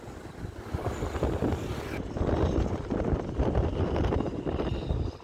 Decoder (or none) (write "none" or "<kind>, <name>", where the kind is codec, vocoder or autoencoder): none